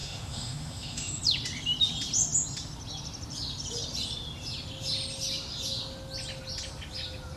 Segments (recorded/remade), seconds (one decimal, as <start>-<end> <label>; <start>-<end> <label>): 0.0-1.2 remade; 1.2-7.4 recorded